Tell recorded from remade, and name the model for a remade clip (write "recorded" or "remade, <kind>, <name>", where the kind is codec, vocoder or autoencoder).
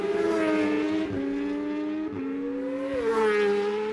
recorded